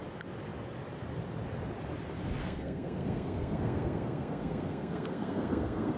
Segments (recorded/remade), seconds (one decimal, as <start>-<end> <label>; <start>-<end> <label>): 0.0-2.4 recorded; 2.4-6.0 remade